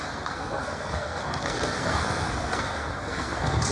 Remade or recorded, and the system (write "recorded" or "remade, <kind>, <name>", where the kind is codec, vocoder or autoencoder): remade, codec, SNAC